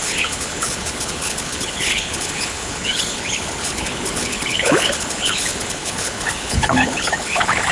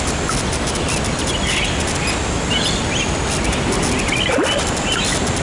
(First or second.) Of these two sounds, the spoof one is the first